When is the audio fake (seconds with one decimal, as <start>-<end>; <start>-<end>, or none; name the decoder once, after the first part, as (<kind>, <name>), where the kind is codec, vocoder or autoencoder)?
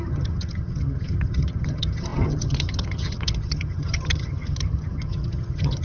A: 0.0-5.8 (vocoder, HiFi-GAN)